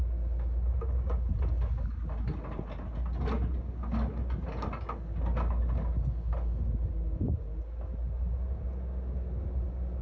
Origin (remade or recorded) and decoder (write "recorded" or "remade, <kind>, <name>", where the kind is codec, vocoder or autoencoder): recorded